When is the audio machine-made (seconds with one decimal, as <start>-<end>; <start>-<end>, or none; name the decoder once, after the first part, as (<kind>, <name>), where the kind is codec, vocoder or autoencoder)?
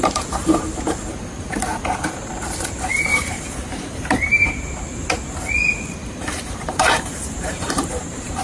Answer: 3.1-4.6 (vocoder, BigVGAN v2); 6.0-8.4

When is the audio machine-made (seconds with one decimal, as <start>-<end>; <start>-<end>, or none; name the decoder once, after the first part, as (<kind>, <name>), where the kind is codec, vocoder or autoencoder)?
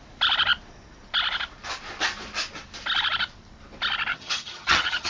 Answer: 4.1-5.1 (vocoder, HiFi-GAN)